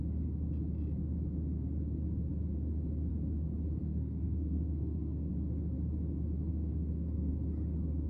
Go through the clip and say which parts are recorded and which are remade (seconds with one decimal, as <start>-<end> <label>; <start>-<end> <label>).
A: 0.0-3.8 recorded; 3.8-5.3 remade; 5.3-6.5 recorded; 6.5-7.3 remade; 7.3-8.1 recorded